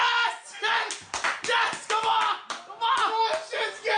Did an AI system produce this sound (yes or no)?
no